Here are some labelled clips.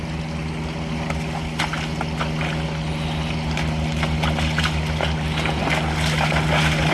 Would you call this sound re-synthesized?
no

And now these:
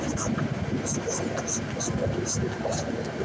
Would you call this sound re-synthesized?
no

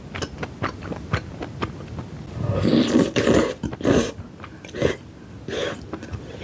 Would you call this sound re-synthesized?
no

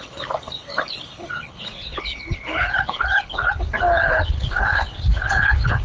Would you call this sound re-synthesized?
yes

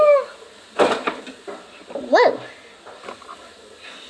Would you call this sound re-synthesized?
no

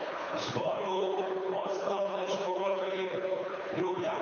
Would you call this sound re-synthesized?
yes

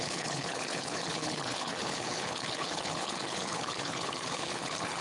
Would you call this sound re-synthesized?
yes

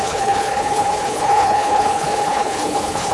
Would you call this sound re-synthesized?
yes